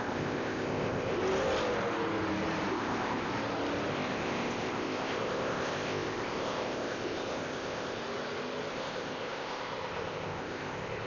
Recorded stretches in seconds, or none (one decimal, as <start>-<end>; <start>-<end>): 1.2-2.7; 3.3-3.9; 8.0-8.7